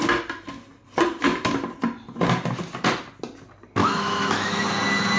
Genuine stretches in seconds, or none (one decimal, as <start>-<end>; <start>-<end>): 0.0-3.8; 4.6-5.2